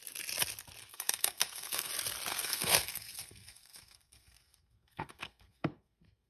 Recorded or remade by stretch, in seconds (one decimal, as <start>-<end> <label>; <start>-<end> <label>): 0.0-0.8 recorded; 0.8-1.9 remade; 1.9-2.3 recorded; 2.3-6.3 remade